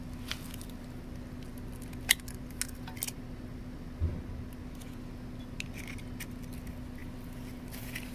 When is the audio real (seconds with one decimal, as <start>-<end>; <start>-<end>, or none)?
0.0-8.1